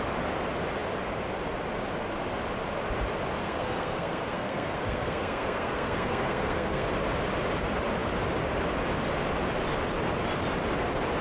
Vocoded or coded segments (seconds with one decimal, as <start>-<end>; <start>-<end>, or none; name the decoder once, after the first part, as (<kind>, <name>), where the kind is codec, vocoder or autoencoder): 3.4-6.9 (codec, SNAC)